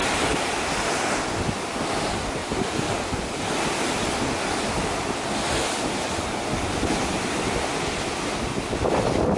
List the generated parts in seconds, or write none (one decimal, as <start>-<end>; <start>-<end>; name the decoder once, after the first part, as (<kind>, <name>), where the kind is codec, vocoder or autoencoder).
0.0-0.9 (vocoder, BigVGAN v2)